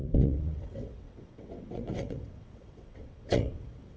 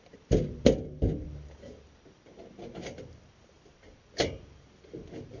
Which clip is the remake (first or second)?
first